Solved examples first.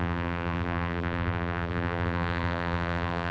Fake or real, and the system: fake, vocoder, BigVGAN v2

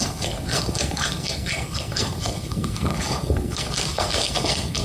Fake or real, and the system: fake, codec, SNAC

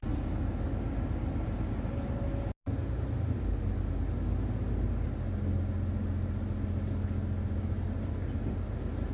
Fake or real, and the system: real